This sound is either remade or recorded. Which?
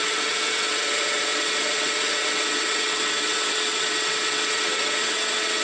remade